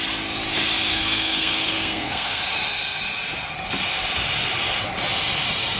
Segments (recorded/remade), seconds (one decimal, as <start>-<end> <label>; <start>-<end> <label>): 0.0-0.9 recorded; 0.9-2.4 remade; 2.4-5.8 recorded